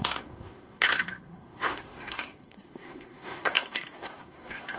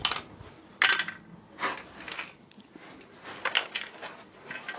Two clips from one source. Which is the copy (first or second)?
first